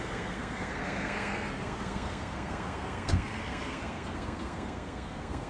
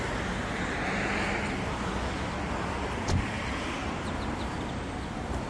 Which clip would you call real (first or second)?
second